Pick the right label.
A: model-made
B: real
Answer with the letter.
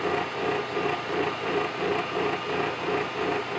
B